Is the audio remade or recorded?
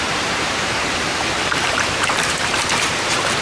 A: remade